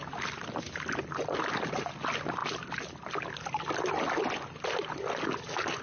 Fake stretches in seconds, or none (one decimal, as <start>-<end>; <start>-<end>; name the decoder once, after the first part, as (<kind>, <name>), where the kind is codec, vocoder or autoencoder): none